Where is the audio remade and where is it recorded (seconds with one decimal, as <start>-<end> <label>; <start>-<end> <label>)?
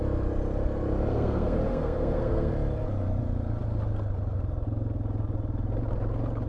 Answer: 0.0-1.1 recorded; 1.1-2.5 remade; 2.5-6.5 recorded